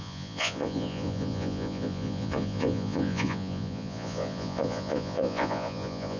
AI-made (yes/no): yes